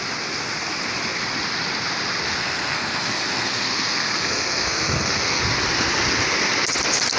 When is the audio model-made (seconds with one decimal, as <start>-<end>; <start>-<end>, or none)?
2.3-5.4